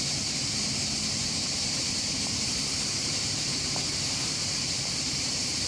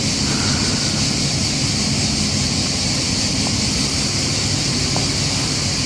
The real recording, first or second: second